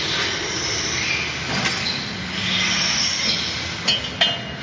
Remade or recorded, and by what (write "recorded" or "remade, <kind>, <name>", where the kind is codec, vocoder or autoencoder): recorded